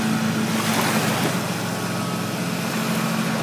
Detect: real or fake real